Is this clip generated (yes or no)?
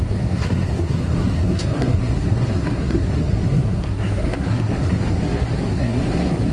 yes